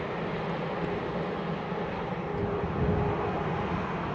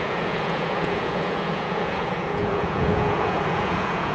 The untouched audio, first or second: first